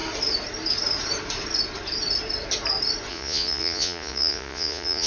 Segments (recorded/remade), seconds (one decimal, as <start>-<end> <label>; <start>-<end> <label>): 0.0-3.1 recorded; 3.1-5.1 remade

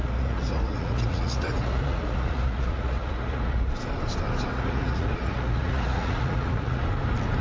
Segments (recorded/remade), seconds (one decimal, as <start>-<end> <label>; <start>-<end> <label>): 0.0-3.7 remade; 3.7-4.5 recorded; 4.5-6.8 remade; 6.8-7.4 recorded

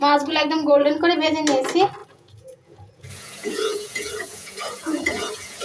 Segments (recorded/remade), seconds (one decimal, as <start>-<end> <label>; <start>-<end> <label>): 0.0-2.0 recorded; 2.0-5.6 remade

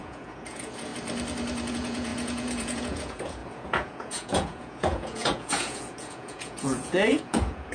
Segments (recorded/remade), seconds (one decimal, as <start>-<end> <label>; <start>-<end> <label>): 0.0-0.9 remade; 0.9-1.7 recorded; 1.7-7.7 remade

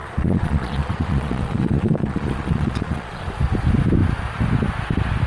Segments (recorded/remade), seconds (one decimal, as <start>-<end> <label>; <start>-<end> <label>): 0.0-3.2 remade; 3.2-5.3 recorded

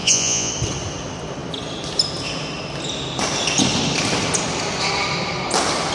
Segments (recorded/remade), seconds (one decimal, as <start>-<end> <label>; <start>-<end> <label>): 0.0-0.5 remade; 0.5-5.9 recorded